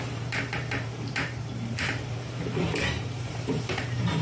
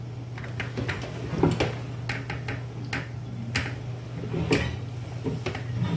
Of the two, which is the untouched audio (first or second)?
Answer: second